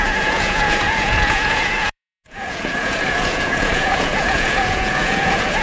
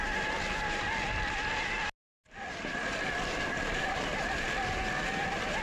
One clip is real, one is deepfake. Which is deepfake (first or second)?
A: first